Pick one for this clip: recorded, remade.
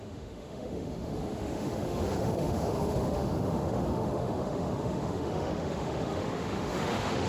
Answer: remade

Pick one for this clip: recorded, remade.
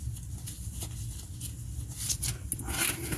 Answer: recorded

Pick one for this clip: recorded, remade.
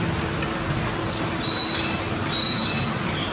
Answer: recorded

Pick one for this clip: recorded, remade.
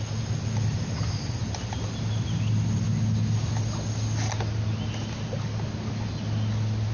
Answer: recorded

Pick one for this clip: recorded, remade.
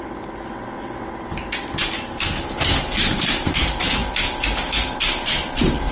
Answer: recorded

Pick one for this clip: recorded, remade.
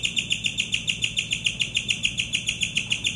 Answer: recorded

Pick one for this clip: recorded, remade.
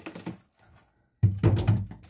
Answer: recorded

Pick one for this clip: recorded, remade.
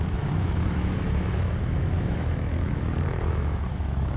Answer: remade